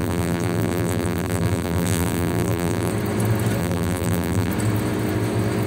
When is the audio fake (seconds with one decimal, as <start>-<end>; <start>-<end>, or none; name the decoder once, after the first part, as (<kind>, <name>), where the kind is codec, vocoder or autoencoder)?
0.0-2.9 (vocoder, BigVGAN v2); 3.6-4.5